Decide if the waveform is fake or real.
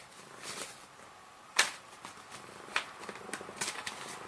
real